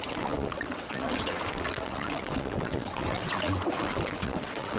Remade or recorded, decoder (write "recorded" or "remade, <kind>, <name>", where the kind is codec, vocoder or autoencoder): remade, vocoder, WaveNeXt